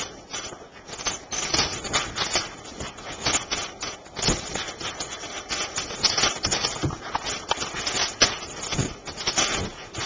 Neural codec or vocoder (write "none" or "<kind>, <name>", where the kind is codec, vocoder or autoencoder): none